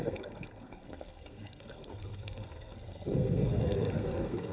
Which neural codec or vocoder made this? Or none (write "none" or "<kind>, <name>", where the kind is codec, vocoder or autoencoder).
codec, SNAC